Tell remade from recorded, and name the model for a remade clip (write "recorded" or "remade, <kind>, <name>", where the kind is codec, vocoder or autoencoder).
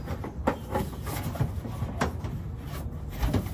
recorded